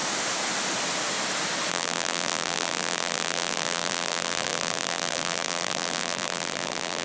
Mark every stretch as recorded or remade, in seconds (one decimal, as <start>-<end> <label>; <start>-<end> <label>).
0.0-1.7 recorded; 1.7-7.0 remade